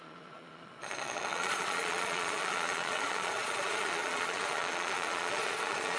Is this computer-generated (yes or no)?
yes